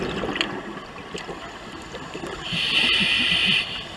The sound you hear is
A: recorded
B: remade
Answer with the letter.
A